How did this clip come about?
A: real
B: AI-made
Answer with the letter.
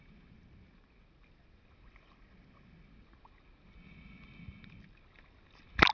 A